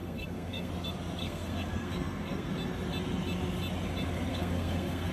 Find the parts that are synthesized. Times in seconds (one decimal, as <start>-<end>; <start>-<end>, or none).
0.0-0.7; 1.2-2.5; 4.3-5.1